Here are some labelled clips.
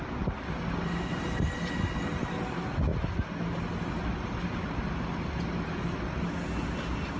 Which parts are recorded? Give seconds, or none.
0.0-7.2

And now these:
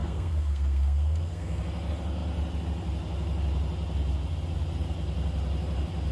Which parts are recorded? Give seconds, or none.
1.6-6.1

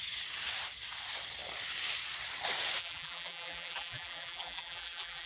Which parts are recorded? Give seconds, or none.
0.0-2.8

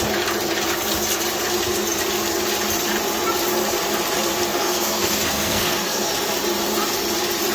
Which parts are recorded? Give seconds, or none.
0.0-4.5; 6.1-7.5

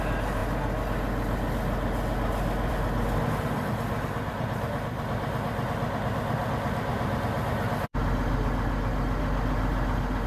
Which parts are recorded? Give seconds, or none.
0.0-10.3

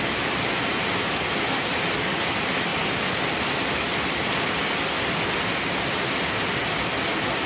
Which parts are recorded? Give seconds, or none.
0.0-7.5